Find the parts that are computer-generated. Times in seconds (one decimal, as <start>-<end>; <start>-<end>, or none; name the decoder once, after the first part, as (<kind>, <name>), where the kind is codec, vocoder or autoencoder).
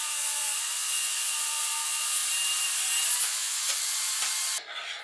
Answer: 0.0-2.2 (vocoder, Vocos); 3.2-3.7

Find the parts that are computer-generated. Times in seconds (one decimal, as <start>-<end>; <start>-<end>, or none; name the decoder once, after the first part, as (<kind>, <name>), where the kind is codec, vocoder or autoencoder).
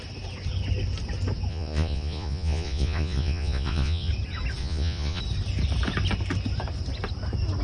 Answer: 1.5-4.1 (vocoder, Vocos); 4.6-5.2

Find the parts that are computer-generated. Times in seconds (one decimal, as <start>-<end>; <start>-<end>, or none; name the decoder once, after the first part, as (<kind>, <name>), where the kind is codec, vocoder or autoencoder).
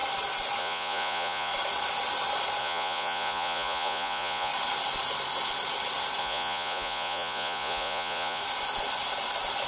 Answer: 0.6-1.5 (vocoder, Vocos); 2.6-4.5; 6.2-8.4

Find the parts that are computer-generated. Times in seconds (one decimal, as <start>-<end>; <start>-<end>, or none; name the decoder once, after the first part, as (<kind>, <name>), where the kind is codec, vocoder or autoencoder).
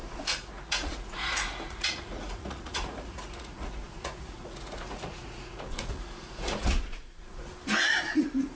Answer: 0.0-7.5 (vocoder, Vocos); 8.1-8.6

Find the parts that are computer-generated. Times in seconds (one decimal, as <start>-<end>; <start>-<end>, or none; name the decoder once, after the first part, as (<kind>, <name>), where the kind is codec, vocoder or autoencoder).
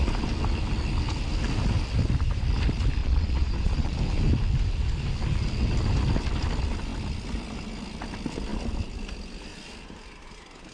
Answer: 3.0-4.0 (vocoder, Vocos)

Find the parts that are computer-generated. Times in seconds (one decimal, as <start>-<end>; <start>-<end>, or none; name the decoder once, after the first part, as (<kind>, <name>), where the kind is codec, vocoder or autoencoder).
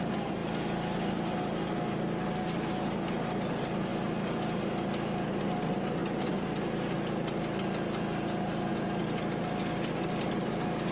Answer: none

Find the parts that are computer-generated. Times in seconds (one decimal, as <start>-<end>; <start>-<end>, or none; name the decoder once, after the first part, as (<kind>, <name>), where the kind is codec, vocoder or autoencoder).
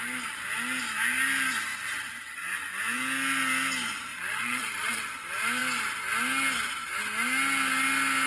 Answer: 4.1-5.0 (vocoder, Vocos)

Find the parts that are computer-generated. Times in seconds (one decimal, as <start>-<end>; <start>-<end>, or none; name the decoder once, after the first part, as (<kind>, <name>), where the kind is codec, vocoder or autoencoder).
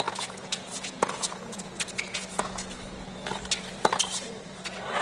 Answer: 0.4-3.4 (vocoder, Vocos)